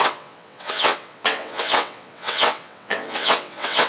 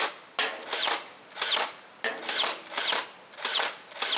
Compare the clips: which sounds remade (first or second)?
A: first